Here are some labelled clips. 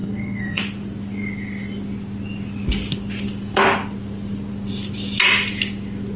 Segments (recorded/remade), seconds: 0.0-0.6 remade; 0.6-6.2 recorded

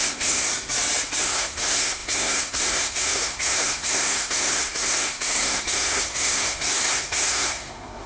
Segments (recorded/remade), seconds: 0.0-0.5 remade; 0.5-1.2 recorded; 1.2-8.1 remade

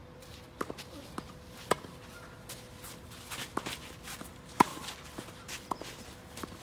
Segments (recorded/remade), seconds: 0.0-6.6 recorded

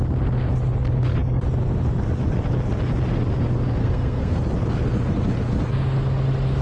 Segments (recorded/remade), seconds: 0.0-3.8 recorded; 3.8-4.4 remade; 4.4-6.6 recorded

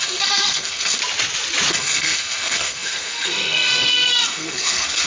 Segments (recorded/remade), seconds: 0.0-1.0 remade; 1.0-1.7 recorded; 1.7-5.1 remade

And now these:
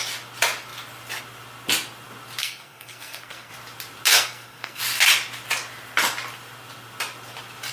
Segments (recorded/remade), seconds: 0.0-2.4 recorded; 2.4-3.5 remade; 3.5-4.1 recorded; 4.1-4.8 remade; 4.8-7.7 recorded